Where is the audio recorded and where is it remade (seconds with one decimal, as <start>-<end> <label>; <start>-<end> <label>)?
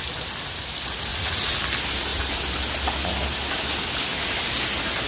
0.0-1.1 recorded; 1.1-1.6 remade; 1.6-5.1 recorded